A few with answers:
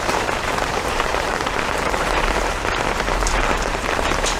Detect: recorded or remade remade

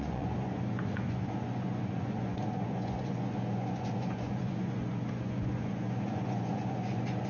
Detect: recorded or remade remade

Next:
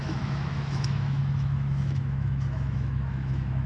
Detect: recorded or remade remade